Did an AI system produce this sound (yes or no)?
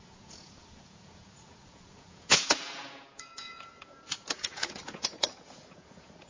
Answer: yes